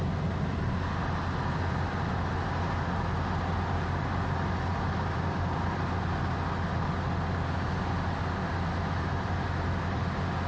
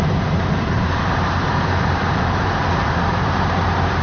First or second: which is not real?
second